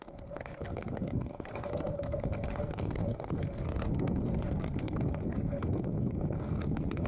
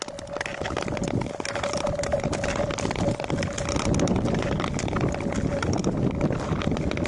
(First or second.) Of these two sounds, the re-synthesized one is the first